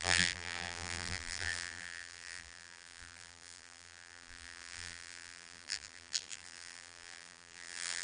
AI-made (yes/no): yes